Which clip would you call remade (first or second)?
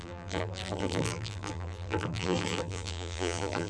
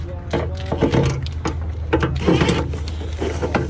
first